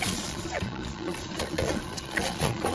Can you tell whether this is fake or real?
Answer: fake